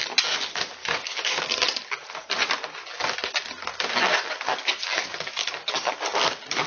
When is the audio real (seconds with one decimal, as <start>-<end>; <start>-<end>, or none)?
0.0-0.8; 1.4-4.8; 5.9-6.7